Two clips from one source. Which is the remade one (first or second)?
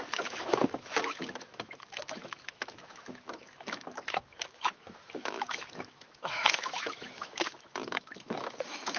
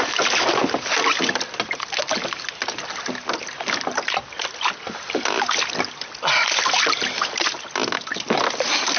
first